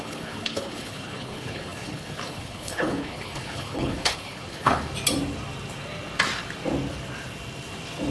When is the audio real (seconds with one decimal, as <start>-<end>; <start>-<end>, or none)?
4.9-8.1